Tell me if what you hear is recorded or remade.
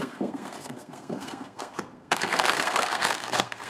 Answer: remade